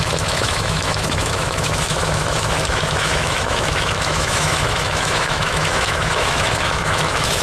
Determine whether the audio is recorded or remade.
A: remade